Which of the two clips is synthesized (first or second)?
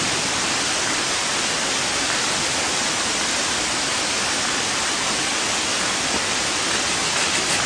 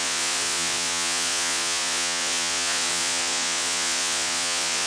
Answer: second